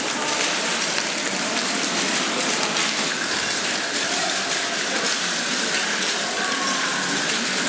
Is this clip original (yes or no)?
no